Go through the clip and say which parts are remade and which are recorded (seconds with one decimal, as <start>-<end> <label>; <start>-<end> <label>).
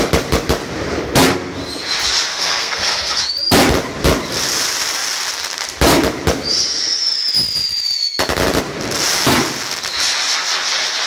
0.0-2.3 recorded; 2.3-3.2 remade; 3.2-11.1 recorded